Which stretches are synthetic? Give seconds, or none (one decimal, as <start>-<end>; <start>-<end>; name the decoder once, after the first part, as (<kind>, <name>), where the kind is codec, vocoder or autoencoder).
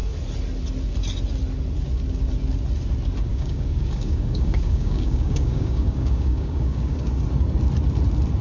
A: 3.3-7.1 (codec, DAC)